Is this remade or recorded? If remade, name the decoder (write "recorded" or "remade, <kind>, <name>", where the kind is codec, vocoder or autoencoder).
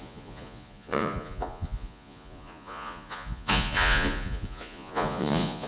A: remade, vocoder, Vocos